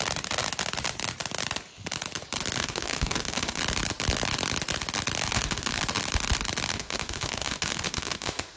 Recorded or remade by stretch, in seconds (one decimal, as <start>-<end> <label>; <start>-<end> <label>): 0.0-2.6 recorded; 2.6-3.6 remade; 3.6-5.3 recorded; 5.3-5.8 remade; 5.8-6.7 recorded; 6.7-8.6 remade